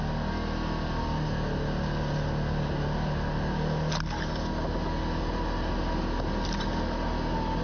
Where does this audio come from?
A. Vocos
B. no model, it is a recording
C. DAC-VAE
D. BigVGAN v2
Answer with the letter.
B